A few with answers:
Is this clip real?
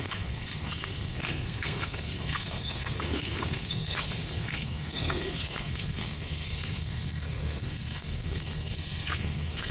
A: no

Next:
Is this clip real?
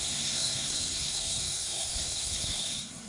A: no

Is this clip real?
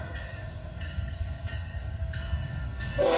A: no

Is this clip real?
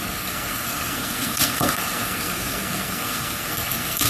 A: no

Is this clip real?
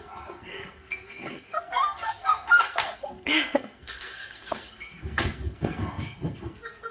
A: no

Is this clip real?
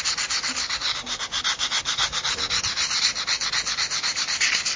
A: yes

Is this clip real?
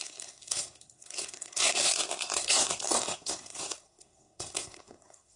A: no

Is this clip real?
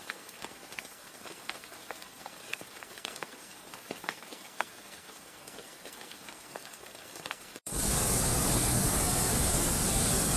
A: no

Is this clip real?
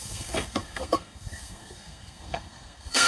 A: no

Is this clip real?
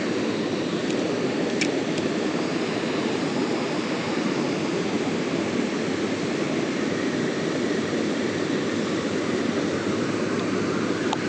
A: yes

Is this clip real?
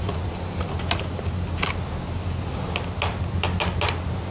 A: yes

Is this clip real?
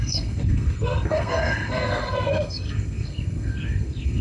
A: no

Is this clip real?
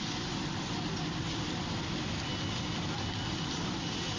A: yes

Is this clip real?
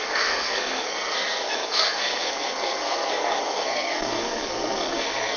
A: no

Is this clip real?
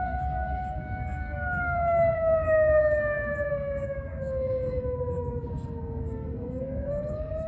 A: no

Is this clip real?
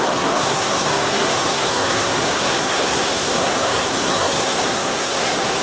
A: no